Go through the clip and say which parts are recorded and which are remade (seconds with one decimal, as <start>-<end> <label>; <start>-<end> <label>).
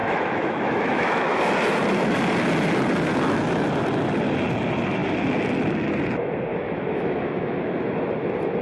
0.0-1.4 remade; 1.4-6.5 recorded; 6.5-7.6 remade; 7.6-8.6 recorded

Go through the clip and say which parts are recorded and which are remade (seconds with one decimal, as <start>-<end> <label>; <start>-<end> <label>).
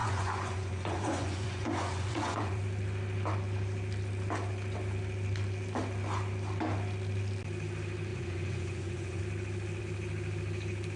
0.0-2.6 remade; 2.6-8.1 recorded; 8.1-9.2 remade; 9.2-11.0 recorded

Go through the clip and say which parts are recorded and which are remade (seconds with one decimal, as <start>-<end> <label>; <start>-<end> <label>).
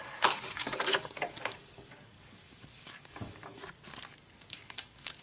0.0-3.6 remade; 3.6-4.3 recorded; 4.3-5.2 remade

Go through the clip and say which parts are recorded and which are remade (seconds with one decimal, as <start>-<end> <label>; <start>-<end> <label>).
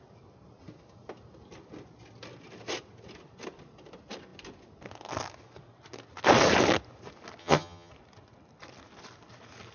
0.0-7.4 recorded; 7.4-7.9 remade; 7.9-9.7 recorded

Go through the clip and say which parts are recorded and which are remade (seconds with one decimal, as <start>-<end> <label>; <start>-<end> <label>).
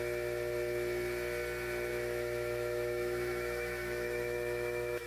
0.0-1.9 recorded; 1.9-5.1 remade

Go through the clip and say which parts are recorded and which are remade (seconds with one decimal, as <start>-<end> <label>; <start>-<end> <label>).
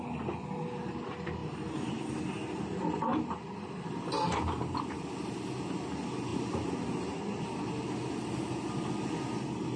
0.0-1.4 recorded; 1.4-1.9 remade; 1.9-9.8 recorded